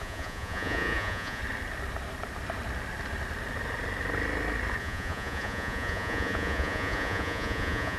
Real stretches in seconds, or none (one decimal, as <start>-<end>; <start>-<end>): 1.4-4.8